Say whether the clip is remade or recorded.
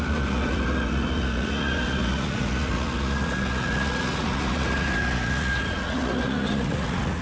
remade